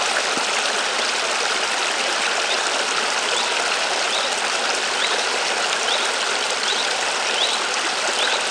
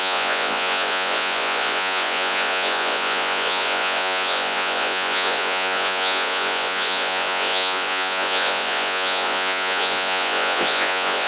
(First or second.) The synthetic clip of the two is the second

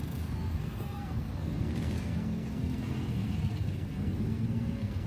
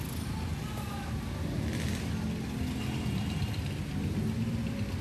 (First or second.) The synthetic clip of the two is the first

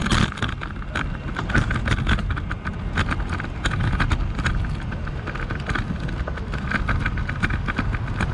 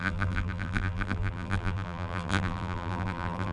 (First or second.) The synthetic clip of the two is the second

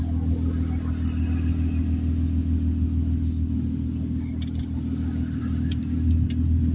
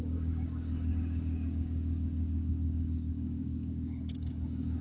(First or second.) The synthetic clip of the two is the second